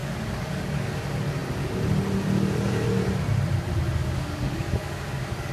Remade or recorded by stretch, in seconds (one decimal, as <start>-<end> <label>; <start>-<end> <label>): 0.0-0.9 remade; 0.9-4.0 recorded; 4.0-5.5 remade